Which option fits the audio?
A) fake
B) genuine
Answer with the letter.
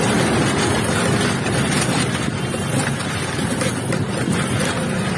B